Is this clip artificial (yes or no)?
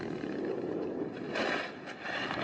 yes